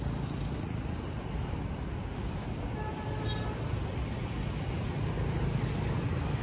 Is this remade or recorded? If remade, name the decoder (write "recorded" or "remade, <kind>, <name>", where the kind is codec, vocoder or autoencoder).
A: recorded